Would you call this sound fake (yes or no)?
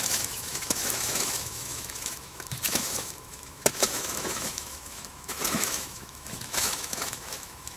yes